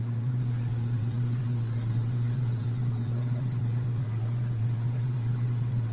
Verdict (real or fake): fake